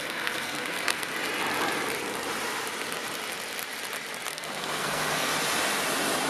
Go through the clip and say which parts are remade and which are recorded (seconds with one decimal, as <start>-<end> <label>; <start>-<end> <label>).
0.0-1.1 remade; 1.1-4.3 recorded; 4.3-5.3 remade; 5.3-6.3 recorded